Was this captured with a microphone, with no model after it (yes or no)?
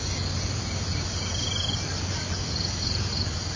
yes